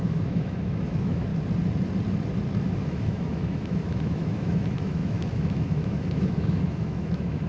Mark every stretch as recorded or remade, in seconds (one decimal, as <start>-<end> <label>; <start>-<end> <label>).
0.0-1.3 remade; 1.3-2.7 recorded; 2.7-7.5 remade